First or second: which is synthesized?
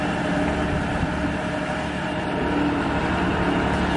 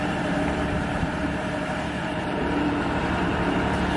second